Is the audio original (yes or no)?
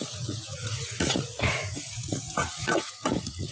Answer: no